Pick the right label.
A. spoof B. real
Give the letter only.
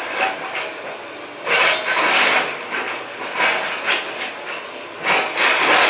B